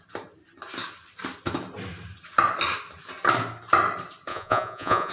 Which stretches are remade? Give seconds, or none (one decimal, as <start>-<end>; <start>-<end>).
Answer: 4.3-5.1

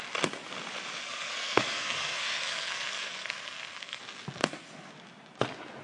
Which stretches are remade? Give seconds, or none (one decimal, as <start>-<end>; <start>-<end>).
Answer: 1.0-4.0; 4.4-4.9

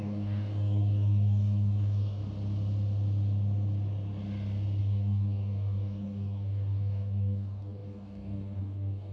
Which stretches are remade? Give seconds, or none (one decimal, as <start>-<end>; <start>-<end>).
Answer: 0.0-2.2; 4.8-9.1

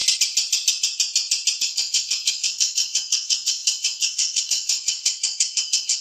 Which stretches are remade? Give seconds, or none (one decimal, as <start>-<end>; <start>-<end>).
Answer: 1.6-6.0

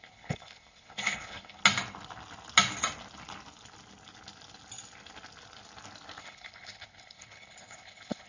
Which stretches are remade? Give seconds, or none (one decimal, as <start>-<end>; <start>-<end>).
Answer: 0.0-1.6; 6.2-8.3

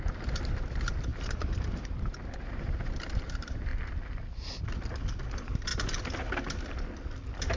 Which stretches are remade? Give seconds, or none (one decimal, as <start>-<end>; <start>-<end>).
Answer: 0.0-3.7; 5.3-5.7

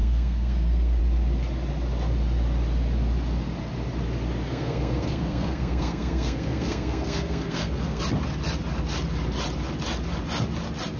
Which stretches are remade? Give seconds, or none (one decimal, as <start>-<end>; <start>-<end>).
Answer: 0.0-1.0; 4.5-8.0

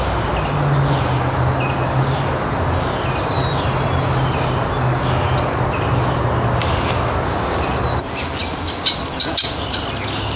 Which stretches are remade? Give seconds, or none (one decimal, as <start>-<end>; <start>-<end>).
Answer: none